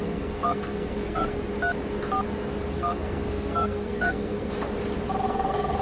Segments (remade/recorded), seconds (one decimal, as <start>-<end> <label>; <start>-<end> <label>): 0.0-1.5 remade; 1.5-2.7 recorded; 2.7-4.5 remade; 4.5-5.2 recorded; 5.2-5.8 remade